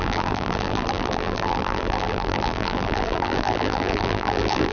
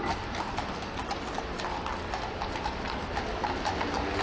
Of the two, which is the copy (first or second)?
first